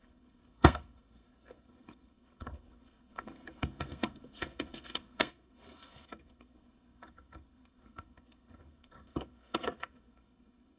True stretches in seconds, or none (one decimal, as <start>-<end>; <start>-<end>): none